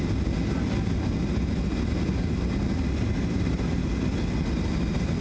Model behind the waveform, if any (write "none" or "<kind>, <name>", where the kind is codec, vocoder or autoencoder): none